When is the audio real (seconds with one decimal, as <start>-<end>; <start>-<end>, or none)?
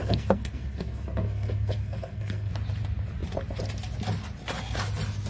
2.5-5.3